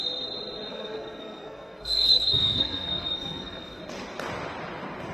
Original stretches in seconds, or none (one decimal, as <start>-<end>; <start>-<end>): 0.0-0.7; 3.8-5.1